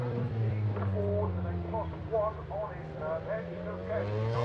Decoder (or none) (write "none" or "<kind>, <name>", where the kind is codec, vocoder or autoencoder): vocoder, BigVGAN v2